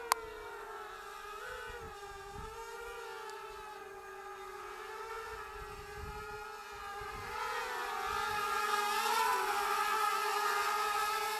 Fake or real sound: real